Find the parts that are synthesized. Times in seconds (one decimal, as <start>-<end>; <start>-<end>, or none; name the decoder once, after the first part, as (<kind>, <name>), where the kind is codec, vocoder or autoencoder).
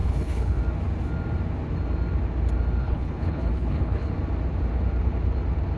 0.0-0.6 (codec, HILCodec); 2.8-4.1